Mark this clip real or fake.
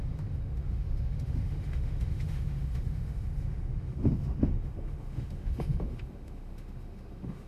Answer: fake